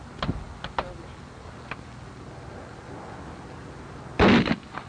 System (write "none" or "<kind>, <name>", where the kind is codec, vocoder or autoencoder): none